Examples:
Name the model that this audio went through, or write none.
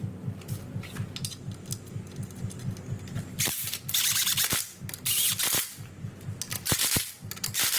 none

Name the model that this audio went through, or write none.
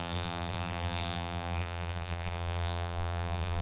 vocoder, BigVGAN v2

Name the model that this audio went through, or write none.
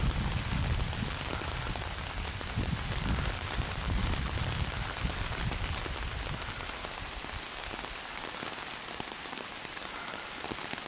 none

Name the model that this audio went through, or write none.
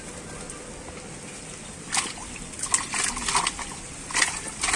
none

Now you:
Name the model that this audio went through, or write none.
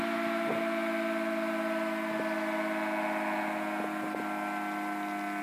none